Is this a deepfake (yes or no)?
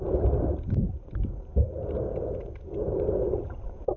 yes